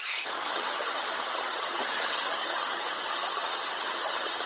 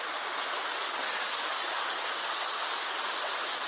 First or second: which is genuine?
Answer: second